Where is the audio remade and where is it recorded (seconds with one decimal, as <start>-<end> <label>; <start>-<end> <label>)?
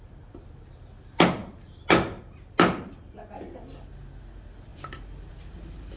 0.0-6.0 recorded